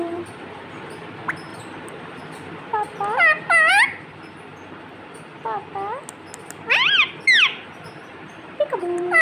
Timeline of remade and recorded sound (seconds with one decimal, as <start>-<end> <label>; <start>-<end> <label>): 0.0-1.5 recorded; 1.5-2.2 remade; 2.2-7.6 recorded; 7.6-9.2 remade